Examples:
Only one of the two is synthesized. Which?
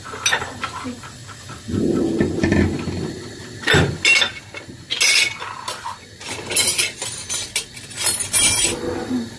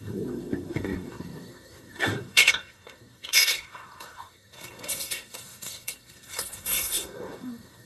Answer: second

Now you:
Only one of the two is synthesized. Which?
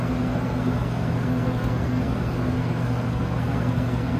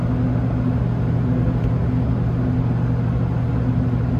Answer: first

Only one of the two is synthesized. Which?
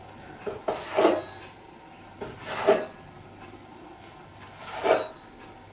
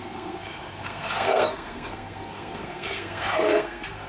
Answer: second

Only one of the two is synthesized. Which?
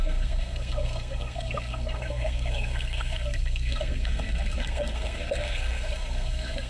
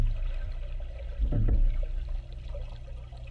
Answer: first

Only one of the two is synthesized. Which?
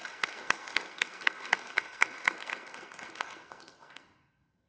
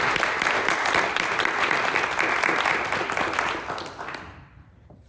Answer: first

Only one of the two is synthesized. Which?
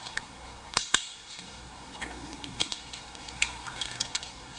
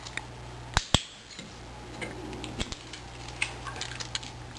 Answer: first